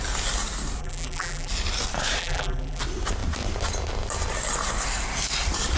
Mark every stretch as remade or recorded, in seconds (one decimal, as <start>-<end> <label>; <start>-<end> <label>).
0.0-0.8 recorded; 0.8-1.5 remade; 1.5-2.2 recorded; 2.2-2.8 remade; 2.8-5.8 recorded